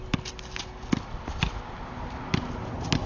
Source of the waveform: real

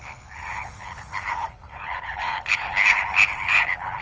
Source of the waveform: fake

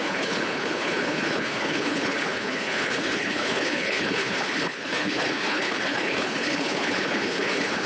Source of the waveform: fake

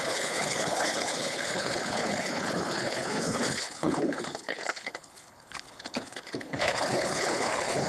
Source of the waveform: fake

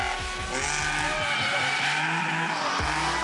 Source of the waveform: real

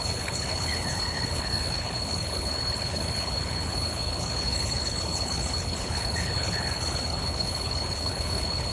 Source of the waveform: fake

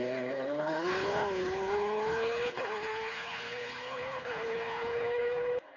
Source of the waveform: fake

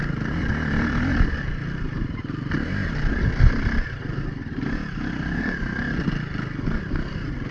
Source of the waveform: real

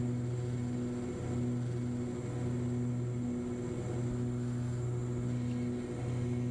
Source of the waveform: real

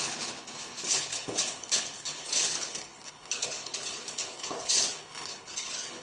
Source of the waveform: fake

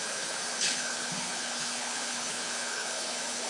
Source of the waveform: fake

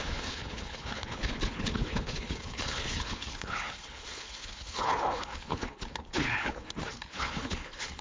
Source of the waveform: fake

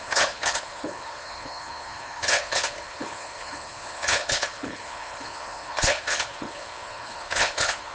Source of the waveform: fake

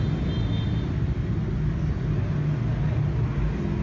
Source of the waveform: real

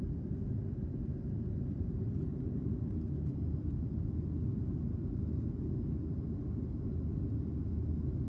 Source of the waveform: real